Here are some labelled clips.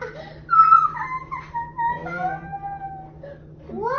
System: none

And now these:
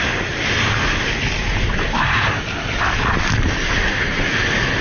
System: none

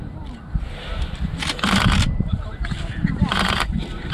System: vocoder, BigVGAN v2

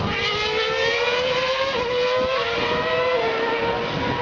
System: none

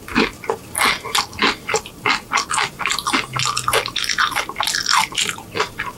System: none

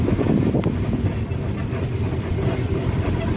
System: vocoder, BigVGAN v2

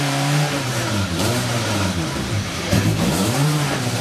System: vocoder, BigVGAN v2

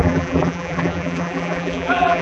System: vocoder, BigVGAN v2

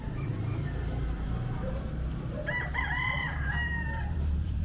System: vocoder, BigVGAN v2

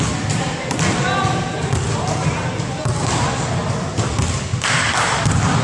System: none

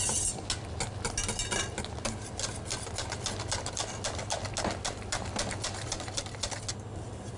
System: none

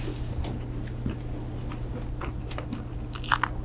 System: none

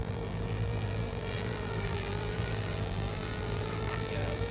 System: vocoder, BigVGAN v2